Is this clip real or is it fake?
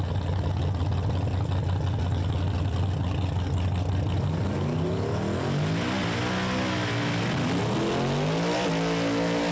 real